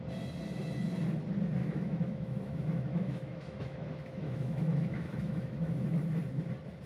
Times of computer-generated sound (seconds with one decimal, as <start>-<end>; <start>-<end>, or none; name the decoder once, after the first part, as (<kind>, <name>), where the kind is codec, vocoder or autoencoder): 1.6-5.7 (autoencoder, DAC-VAE)